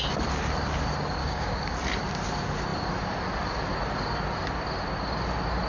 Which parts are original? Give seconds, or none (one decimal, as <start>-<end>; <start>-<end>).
0.0-1.2; 1.7-5.7